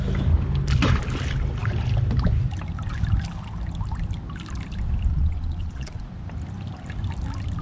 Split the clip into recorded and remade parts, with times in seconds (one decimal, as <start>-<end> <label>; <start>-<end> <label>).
0.0-5.1 recorded; 5.1-6.0 remade; 6.0-7.6 recorded